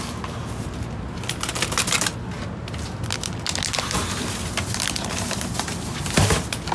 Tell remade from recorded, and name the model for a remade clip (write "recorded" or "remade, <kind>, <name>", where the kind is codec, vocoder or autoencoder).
recorded